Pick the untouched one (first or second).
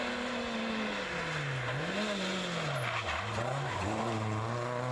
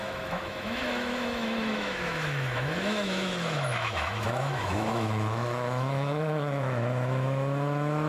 first